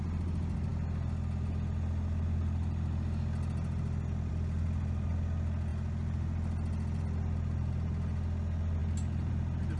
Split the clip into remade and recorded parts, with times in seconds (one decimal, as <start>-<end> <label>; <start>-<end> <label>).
0.0-9.8 recorded